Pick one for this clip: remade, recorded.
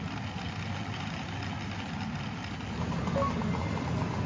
recorded